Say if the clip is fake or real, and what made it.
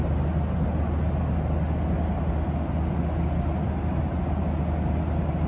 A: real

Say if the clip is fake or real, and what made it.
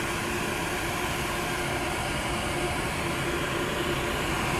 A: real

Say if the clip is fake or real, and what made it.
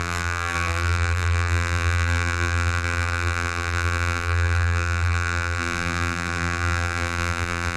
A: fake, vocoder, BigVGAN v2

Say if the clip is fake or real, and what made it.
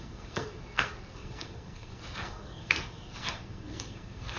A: fake, codec, SNAC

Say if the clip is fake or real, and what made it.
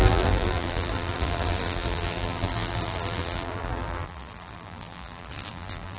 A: fake, vocoder, BigVGAN v2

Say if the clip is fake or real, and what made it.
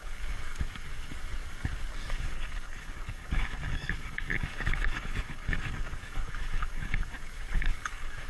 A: fake, codec, DAC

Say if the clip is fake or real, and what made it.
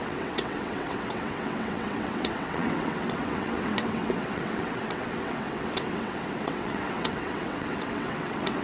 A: fake, vocoder, WaveNeXt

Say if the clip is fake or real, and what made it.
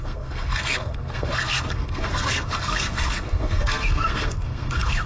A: fake, codec, SNAC